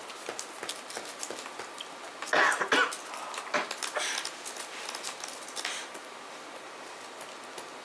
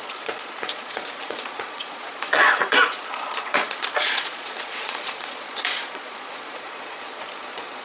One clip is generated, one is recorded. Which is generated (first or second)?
second